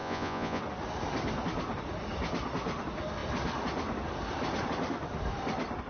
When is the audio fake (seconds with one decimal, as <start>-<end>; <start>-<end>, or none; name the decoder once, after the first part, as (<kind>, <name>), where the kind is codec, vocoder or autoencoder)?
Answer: 0.0-0.6 (vocoder, Vocos)